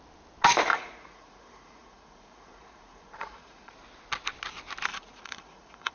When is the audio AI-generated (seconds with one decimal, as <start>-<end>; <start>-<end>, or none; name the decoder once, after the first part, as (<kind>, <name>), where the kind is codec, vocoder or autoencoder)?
0.7-3.7 (vocoder, Vocos); 4.9-5.9